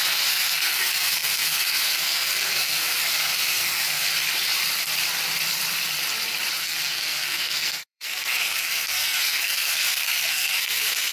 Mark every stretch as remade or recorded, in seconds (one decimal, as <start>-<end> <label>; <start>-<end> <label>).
0.0-4.1 remade; 4.1-6.6 recorded; 6.6-11.1 remade